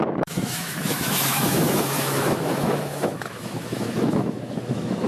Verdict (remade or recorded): remade